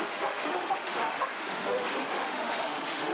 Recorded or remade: remade